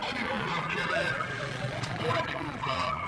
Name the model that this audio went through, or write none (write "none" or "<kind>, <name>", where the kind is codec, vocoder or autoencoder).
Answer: vocoder, Vocos